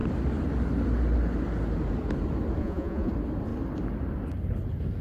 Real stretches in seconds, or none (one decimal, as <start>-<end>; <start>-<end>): 0.0-2.6; 3.1-5.0